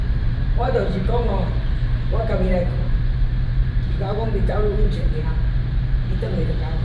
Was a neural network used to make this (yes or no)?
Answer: yes